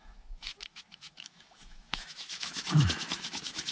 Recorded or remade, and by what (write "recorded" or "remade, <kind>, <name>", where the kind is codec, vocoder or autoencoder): remade, autoencoder, DAC-VAE